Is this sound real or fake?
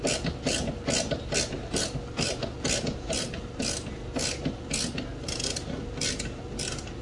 real